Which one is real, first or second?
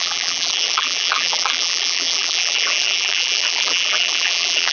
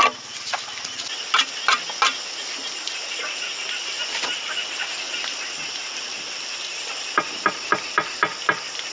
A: second